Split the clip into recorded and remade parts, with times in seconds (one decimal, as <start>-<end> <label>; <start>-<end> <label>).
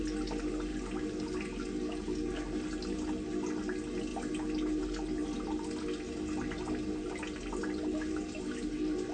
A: 0.0-9.1 recorded